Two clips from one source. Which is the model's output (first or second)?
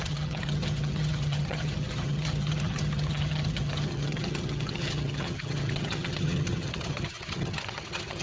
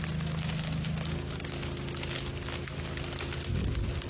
first